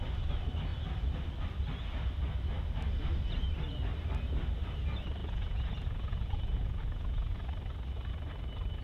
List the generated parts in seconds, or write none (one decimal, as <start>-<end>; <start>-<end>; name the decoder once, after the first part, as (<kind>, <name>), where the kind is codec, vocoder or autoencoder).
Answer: 5.2-7.4 (vocoder, Vocos)